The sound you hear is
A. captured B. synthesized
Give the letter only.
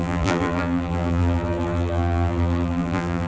B